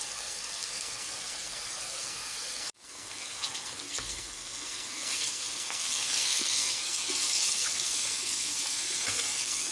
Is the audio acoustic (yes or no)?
no